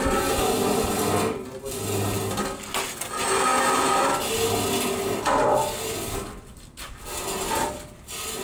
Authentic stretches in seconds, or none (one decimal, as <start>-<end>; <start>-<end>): 0.0-8.4